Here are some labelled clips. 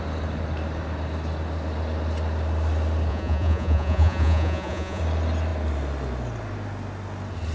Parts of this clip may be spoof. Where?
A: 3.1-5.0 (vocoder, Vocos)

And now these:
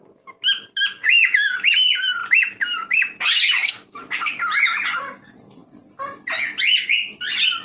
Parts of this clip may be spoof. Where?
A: 1.0-1.7 (vocoder, Vocos)

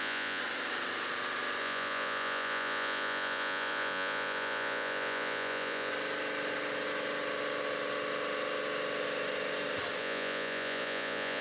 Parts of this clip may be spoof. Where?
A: 0.0-0.4 (vocoder, Vocos); 1.6-5.9; 10.0-11.4

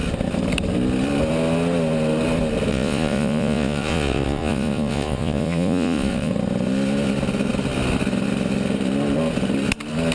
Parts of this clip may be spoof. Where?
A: 2.7-6.3 (vocoder, Vocos)

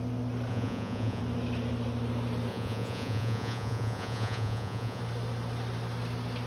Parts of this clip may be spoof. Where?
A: 0.5-1.2 (vocoder, Vocos); 2.5-5.0

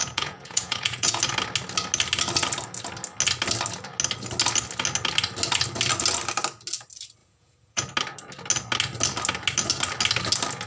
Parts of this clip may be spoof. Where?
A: 0.0-1.2 (vocoder, Vocos); 7.2-7.9

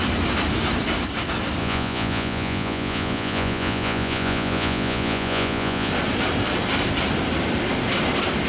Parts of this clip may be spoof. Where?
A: 1.6-5.9 (vocoder, Vocos)